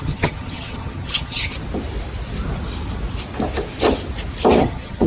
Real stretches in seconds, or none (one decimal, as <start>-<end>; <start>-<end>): 1.5-4.6

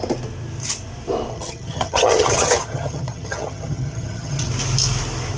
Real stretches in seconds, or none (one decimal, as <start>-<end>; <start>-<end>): 0.0-1.3; 4.5-5.4

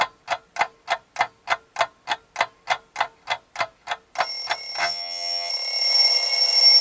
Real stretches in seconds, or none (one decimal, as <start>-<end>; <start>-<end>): 0.0-4.8; 5.5-6.8